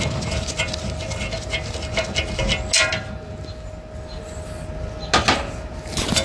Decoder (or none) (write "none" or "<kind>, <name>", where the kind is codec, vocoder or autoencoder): none